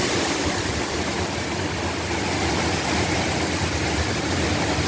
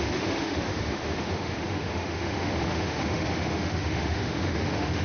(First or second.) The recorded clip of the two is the first